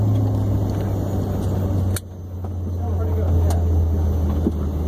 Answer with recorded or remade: recorded